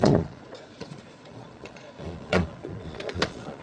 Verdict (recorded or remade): remade